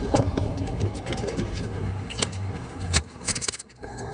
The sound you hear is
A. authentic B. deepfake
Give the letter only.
B